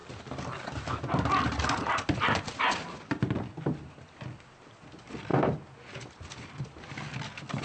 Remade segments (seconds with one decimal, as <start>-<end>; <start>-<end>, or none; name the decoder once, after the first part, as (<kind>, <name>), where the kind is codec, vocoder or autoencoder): none